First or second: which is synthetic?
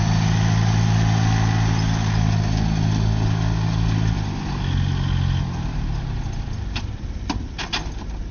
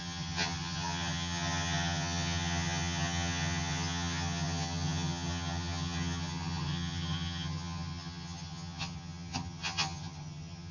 second